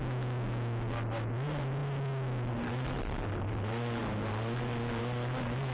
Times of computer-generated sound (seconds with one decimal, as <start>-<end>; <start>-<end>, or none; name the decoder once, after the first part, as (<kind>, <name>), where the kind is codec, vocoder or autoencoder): none